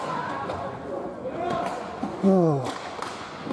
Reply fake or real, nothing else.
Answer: fake